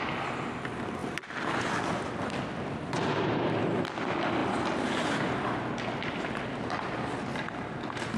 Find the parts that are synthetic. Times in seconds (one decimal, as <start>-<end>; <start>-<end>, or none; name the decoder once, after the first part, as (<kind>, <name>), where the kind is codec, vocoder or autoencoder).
none